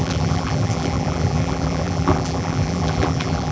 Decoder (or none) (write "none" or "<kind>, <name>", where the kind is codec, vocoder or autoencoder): vocoder, BigVGAN v2